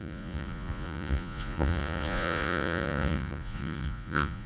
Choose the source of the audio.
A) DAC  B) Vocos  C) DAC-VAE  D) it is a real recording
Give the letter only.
B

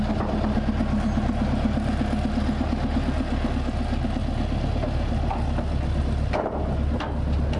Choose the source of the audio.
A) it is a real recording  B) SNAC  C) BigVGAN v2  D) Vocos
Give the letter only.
A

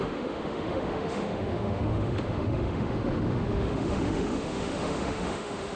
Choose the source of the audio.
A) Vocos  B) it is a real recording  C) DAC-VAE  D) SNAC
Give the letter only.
C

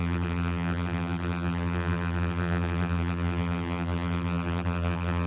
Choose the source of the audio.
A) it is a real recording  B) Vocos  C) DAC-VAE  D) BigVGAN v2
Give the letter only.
D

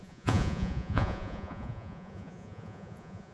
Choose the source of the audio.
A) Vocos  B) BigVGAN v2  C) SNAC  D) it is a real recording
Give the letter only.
A